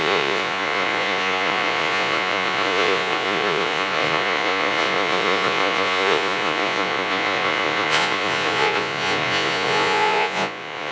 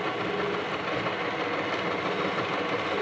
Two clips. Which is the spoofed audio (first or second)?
first